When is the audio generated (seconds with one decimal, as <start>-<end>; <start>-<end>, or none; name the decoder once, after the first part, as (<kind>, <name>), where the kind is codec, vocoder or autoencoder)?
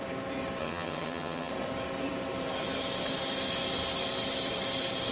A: 0.6-1.5 (vocoder, HiFi-GAN)